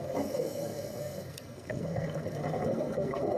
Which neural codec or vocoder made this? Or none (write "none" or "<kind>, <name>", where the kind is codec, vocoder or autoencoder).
codec, SNAC